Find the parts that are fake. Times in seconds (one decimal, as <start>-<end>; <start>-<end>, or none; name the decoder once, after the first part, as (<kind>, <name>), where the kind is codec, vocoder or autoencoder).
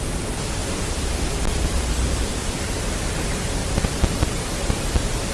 0.6-2.3 (vocoder, BigVGAN v2); 3.6-4.4